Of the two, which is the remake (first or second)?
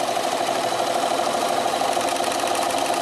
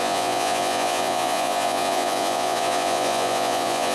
second